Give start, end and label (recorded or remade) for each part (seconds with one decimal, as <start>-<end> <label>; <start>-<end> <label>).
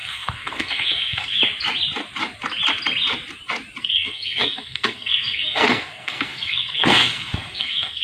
0.0-1.4 remade; 1.4-3.8 recorded; 3.8-8.0 remade